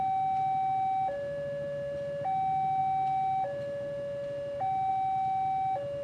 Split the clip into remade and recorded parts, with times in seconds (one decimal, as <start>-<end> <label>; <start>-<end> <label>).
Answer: 0.0-6.0 recorded